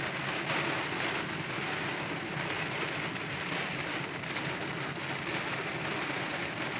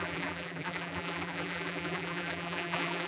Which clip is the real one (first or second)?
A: first